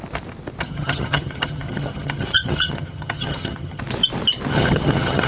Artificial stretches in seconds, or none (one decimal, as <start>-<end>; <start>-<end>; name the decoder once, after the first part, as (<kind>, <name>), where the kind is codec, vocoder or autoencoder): 0.6-3.8 (vocoder, HiFi-GAN); 4.5-5.3